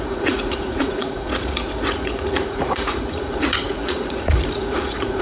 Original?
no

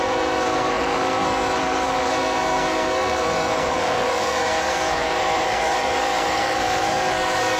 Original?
no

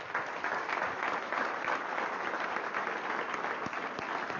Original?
yes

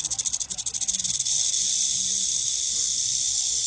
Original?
yes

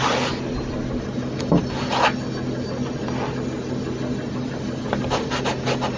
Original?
yes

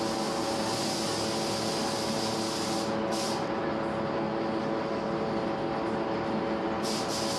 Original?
yes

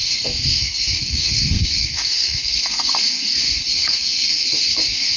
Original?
no